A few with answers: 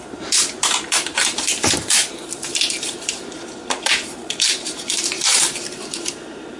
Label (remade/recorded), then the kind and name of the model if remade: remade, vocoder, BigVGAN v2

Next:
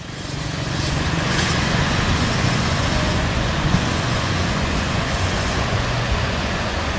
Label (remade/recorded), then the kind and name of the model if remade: remade, vocoder, Vocos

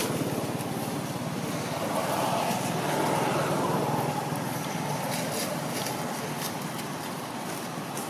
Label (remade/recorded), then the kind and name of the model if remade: recorded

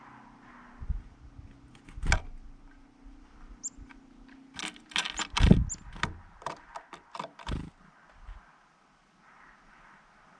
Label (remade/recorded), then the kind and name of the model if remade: recorded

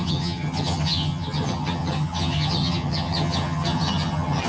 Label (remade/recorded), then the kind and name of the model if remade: remade, vocoder, HiFi-GAN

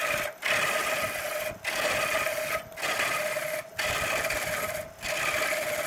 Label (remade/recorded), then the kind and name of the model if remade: recorded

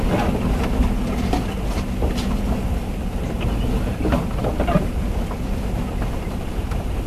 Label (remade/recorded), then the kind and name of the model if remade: recorded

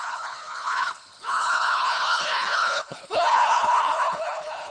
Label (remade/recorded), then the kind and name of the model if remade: remade, codec, HILCodec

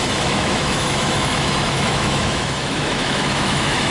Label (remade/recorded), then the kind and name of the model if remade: remade, autoencoder, DAC-VAE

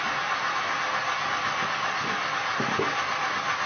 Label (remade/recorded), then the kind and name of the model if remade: recorded